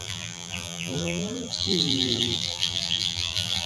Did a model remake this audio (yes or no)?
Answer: yes